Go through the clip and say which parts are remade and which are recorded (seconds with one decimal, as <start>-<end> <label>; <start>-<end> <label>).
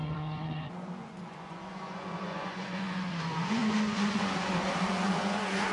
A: 0.0-5.7 remade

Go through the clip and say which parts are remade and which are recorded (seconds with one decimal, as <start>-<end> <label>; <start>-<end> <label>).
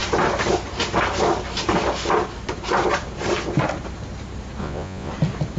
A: 0.0-4.6 recorded; 4.6-5.1 remade; 5.1-5.6 recorded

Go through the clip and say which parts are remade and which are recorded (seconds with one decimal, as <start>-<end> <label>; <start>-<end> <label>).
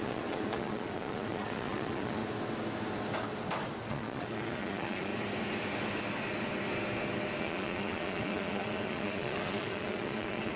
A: 0.0-2.2 remade; 2.2-3.9 recorded; 3.9-5.1 remade; 5.1-7.4 recorded; 7.4-10.6 remade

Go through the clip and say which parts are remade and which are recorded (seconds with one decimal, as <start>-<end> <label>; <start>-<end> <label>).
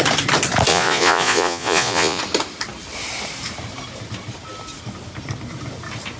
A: 0.0-0.7 recorded; 0.7-2.2 remade; 2.2-6.2 recorded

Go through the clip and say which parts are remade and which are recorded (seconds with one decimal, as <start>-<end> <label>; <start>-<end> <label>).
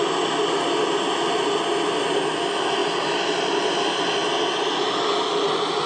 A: 0.0-5.9 recorded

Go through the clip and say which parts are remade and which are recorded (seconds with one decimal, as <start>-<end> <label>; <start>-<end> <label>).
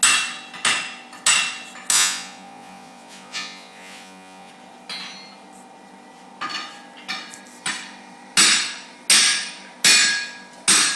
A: 0.0-1.9 recorded; 1.9-4.5 remade; 4.5-11.0 recorded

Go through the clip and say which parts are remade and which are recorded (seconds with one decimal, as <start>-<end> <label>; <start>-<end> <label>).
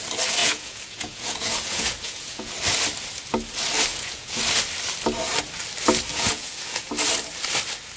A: 0.0-0.4 recorded; 0.4-2.5 remade; 2.5-3.9 recorded; 3.9-4.4 remade; 4.4-6.1 recorded; 6.1-6.9 remade; 6.9-8.0 recorded